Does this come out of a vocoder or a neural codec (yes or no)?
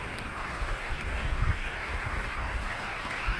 yes